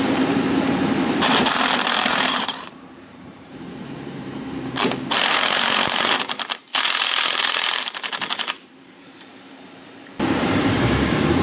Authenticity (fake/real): fake